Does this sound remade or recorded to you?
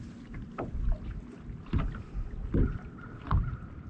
recorded